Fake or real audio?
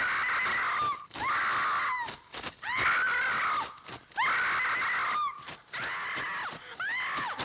real